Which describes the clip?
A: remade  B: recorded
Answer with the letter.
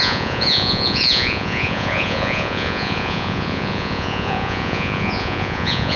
A